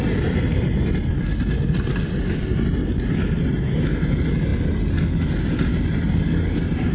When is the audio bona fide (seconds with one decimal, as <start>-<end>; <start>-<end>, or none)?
0.0-6.9